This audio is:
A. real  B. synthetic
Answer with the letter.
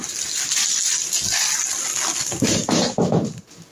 A